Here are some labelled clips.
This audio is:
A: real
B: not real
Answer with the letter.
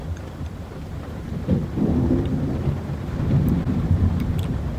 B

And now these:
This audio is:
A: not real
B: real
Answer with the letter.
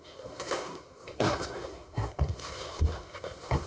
A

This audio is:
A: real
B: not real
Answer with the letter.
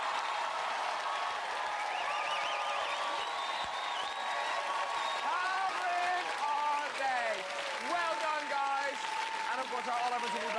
B